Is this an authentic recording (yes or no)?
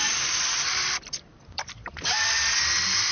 no